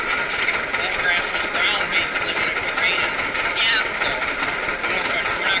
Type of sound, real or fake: real